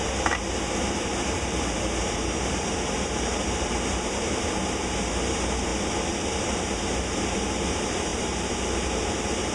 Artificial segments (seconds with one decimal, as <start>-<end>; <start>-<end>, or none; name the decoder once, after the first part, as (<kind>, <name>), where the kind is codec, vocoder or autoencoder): 0.0-5.7 (vocoder, BigVGAN v2); 6.6-9.5